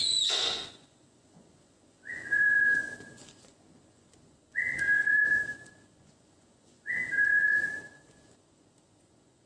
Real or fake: fake